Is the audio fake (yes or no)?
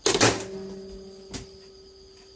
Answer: no